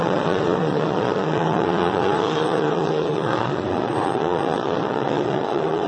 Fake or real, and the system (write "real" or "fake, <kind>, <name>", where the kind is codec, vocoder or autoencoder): fake, vocoder, Vocos